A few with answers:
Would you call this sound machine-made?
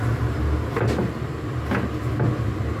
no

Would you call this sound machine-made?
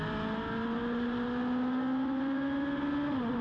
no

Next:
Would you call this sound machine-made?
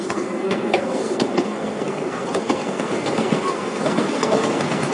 yes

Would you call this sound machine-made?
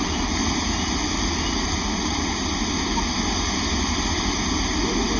no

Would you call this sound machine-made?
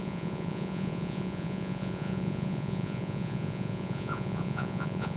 yes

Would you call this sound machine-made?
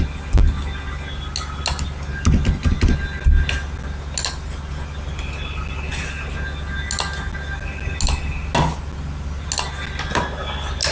no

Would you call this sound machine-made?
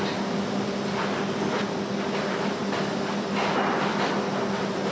no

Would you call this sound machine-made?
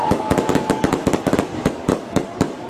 yes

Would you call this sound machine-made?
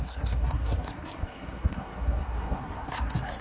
yes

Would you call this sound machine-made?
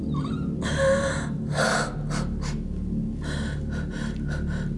no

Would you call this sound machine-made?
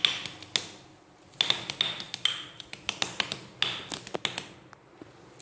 no